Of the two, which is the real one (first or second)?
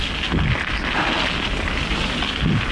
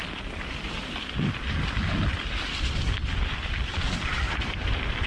first